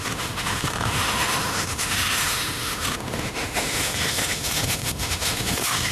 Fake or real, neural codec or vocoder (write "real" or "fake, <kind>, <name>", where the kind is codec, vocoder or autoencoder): fake, autoencoder, DAC-VAE